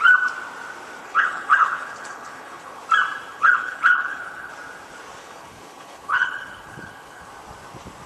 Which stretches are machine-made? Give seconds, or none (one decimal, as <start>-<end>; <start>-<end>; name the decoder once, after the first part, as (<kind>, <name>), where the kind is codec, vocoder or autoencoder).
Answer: 1.0-2.8 (codec, HILCodec); 3.3-4.5; 5.2-7.3